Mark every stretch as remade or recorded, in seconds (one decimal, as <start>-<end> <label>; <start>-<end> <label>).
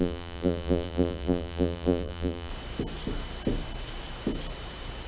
0.0-2.5 remade; 2.5-5.1 recorded